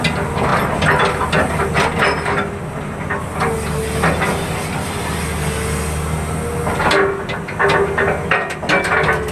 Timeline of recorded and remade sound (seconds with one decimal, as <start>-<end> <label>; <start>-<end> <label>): 0.0-9.3 recorded